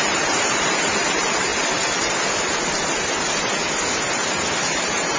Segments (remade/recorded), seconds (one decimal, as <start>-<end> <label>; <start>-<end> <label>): 0.0-1.5 remade; 1.5-4.6 recorded; 4.6-5.2 remade